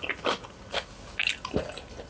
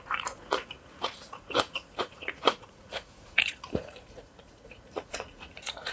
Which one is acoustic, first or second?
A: first